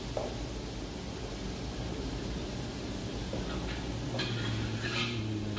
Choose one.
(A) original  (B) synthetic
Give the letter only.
A